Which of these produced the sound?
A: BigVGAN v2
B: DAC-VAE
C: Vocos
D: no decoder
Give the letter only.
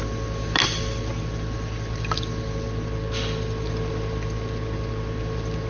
A